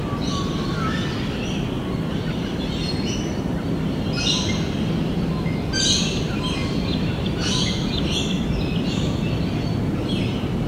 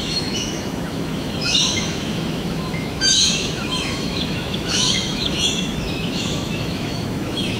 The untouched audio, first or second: first